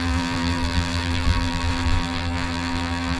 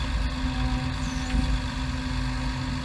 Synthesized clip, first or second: first